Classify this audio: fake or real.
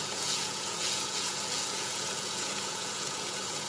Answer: fake